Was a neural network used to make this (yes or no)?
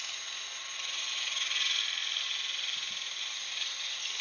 no